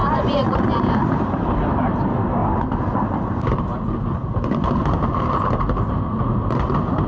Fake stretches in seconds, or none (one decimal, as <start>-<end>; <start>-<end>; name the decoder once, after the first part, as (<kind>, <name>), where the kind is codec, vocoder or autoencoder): 0.0-2.4 (vocoder, BigVGAN v2); 5.6-7.1